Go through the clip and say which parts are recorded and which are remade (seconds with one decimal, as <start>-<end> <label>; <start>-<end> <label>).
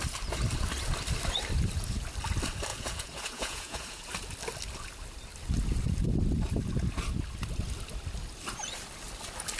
0.0-2.7 recorded; 2.7-4.1 remade; 4.1-9.6 recorded